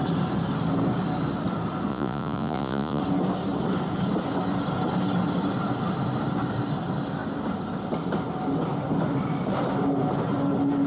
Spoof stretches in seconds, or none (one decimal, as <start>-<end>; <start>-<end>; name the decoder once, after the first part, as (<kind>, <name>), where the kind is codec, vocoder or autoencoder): 1.9-3.0 (vocoder, Vocos)